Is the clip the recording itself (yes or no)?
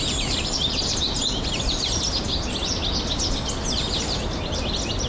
yes